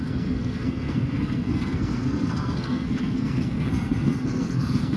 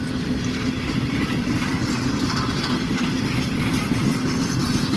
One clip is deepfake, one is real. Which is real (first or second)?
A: second